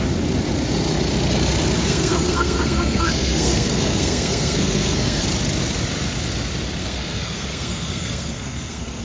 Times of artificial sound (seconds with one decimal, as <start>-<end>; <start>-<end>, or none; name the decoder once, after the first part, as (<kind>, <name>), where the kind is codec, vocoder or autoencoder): 1.8-5.2 (codec, SNAC); 6.8-9.0